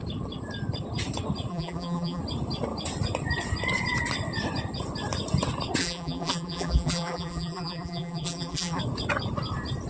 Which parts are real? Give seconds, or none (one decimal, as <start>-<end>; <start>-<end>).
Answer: 0.0-1.5; 2.2-5.8; 8.8-9.9